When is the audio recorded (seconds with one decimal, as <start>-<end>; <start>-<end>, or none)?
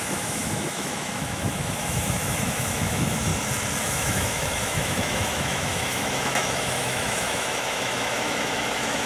3.3-3.8